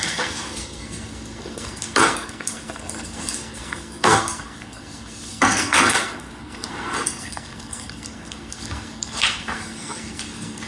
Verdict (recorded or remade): remade